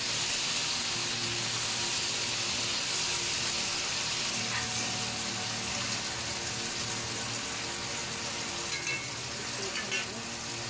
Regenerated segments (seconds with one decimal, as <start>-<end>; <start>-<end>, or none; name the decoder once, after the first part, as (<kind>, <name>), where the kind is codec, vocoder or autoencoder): none